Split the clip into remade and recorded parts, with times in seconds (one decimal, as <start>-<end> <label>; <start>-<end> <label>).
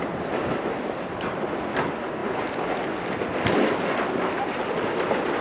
0.0-5.4 recorded